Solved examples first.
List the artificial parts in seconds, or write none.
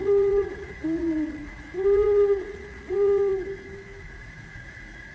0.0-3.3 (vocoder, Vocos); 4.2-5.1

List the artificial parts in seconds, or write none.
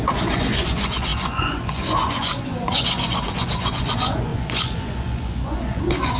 0.0-6.2 (vocoder, Vocos)